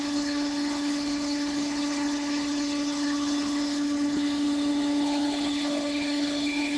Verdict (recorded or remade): remade